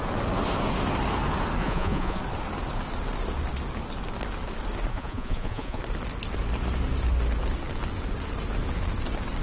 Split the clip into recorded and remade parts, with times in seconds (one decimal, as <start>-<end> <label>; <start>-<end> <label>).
0.0-1.6 recorded; 1.6-2.2 remade; 2.2-4.9 recorded; 4.9-5.8 remade; 5.8-9.4 recorded